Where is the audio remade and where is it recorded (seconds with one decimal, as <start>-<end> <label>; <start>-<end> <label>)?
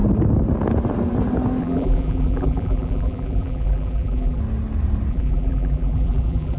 0.0-1.6 recorded; 1.6-4.4 remade; 4.4-5.1 recorded; 5.1-6.6 remade